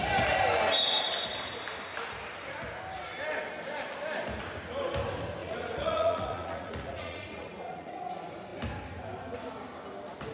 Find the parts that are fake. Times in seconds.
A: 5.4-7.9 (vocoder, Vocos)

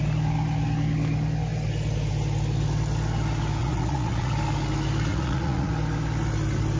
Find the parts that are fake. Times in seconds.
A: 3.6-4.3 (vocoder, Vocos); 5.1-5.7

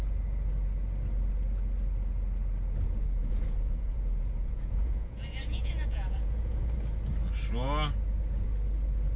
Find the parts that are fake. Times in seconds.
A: 3.2-6.9 (vocoder, Vocos)

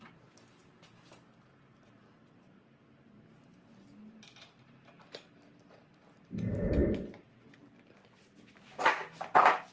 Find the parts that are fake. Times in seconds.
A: none

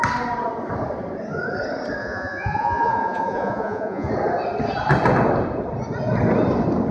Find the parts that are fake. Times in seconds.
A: 2.0-4.1 (vocoder, Vocos)

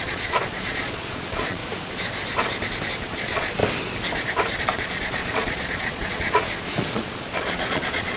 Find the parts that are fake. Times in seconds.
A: 0.0-1.6 (vocoder, Vocos); 2.9-3.6; 4.6-8.2

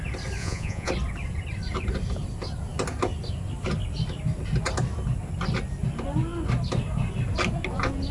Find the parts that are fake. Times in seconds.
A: 0.4-0.9 (vocoder, Vocos)

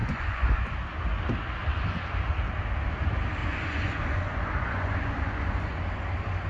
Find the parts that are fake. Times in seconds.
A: 0.0-0.7 (vocoder, Vocos); 3.4-5.8